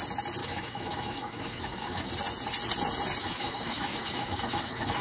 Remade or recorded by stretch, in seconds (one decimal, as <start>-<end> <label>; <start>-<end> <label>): 0.0-0.4 recorded; 0.4-2.1 remade; 2.1-3.2 recorded; 3.2-5.0 remade